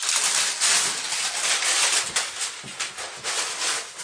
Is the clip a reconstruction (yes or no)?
no